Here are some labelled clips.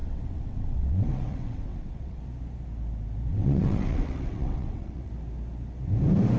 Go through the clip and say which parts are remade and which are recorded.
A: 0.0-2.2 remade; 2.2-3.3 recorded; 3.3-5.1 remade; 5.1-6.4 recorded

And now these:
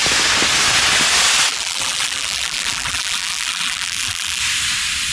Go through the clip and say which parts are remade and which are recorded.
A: 0.0-1.5 recorded; 1.5-4.4 remade; 4.4-5.1 recorded

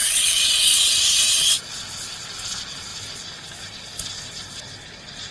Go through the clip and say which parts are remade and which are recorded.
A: 0.0-1.6 remade; 1.6-5.3 recorded